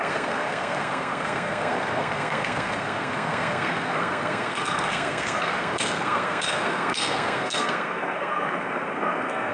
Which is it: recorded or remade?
remade